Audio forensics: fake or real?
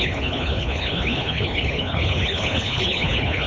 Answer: fake